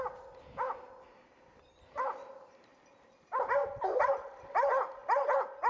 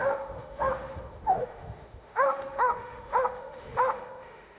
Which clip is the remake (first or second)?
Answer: second